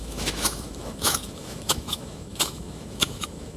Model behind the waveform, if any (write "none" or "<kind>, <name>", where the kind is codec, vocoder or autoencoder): autoencoder, DAC-VAE